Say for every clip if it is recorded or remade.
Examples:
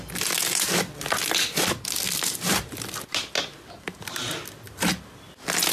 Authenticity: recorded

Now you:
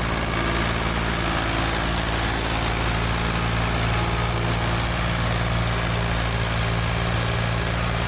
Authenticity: recorded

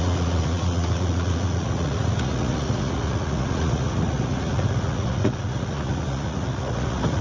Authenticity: remade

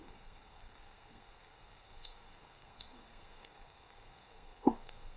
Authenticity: remade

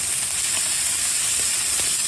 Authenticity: recorded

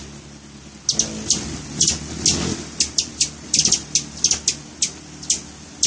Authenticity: recorded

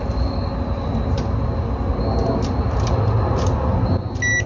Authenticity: recorded